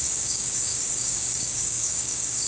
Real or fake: fake